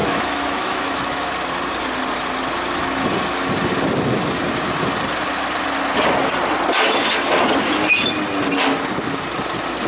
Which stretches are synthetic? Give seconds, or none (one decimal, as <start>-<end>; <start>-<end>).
0.0-1.2